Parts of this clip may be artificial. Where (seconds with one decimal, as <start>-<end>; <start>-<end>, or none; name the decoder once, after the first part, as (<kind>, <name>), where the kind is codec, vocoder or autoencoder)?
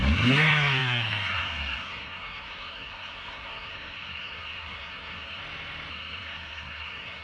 0.0-5.4 (codec, SNAC); 5.9-7.2